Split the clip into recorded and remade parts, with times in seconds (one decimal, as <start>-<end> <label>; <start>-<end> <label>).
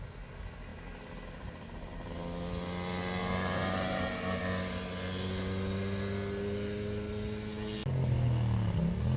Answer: 0.0-9.2 recorded